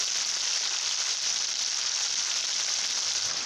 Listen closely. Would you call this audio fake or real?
real